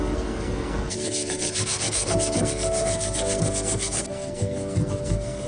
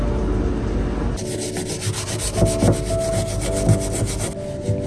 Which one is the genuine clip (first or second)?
second